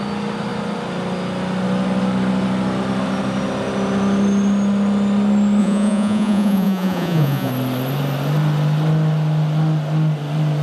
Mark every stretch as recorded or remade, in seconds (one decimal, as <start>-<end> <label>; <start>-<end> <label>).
0.0-5.6 recorded; 5.6-7.5 remade; 7.5-10.6 recorded

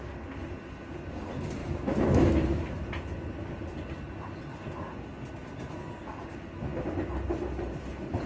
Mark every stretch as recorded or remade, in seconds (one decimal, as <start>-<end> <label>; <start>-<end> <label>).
0.0-1.6 recorded; 1.6-2.6 remade; 2.6-8.3 recorded

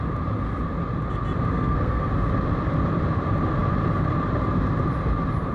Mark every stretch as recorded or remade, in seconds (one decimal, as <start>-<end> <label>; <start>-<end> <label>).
0.0-1.5 recorded; 1.5-2.1 remade; 2.1-5.5 recorded

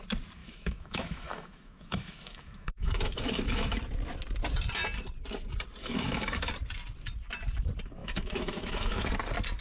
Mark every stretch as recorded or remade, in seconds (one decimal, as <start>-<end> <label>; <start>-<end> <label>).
0.0-0.4 recorded; 0.4-3.8 remade; 3.8-5.8 recorded; 5.8-6.5 remade; 6.5-8.0 recorded; 8.0-9.1 remade; 9.1-9.6 recorded

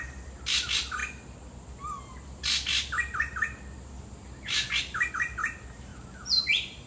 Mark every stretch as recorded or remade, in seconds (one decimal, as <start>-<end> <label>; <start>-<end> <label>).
0.0-6.9 recorded